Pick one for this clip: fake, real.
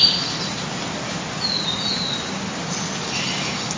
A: real